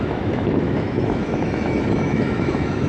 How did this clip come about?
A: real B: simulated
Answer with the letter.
B